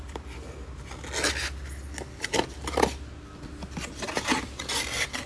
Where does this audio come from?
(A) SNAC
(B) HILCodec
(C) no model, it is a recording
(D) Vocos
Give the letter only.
C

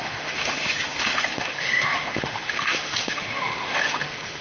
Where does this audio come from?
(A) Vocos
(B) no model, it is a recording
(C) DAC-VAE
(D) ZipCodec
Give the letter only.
C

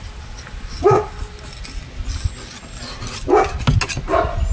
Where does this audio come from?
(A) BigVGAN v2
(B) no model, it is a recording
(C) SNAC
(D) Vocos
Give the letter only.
B